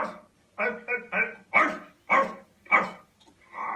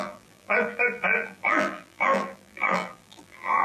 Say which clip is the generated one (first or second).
second